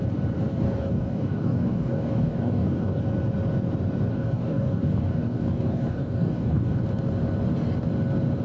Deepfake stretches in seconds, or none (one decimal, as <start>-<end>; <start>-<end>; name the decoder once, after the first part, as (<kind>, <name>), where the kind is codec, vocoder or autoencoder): 0.5-3.0 (codec, DAC); 4.1-6.8